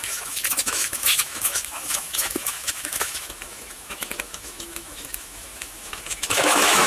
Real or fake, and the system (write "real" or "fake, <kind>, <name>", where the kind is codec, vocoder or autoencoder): fake, autoencoder, DAC-VAE